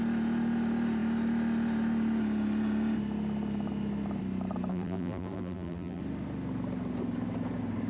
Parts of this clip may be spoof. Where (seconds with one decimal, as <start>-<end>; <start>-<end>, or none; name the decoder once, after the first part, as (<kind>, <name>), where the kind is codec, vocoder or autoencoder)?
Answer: 4.7-6.0 (vocoder, BigVGAN v2)